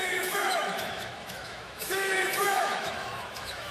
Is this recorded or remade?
remade